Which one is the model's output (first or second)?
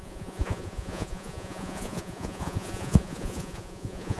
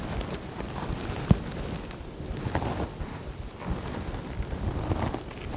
first